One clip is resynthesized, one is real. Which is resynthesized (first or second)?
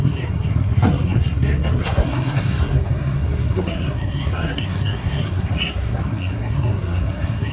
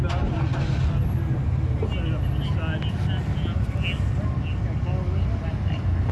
first